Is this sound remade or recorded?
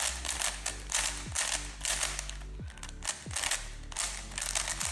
recorded